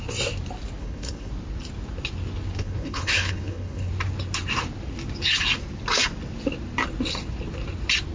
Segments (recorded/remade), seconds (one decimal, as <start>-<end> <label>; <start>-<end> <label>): 0.0-0.8 recorded; 0.8-1.3 remade; 1.3-2.6 recorded; 2.6-3.9 remade; 3.9-8.1 recorded